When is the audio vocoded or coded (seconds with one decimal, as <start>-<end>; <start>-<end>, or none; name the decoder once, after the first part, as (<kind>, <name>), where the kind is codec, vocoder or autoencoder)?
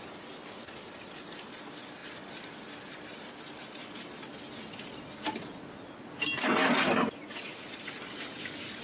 none